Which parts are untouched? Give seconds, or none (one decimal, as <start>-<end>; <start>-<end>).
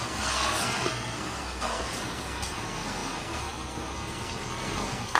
none